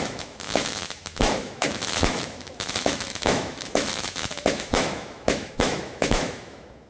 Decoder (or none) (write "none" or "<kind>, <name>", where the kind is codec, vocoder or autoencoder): autoencoder, DAC-VAE